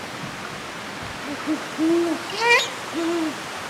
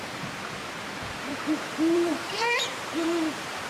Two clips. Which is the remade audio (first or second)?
second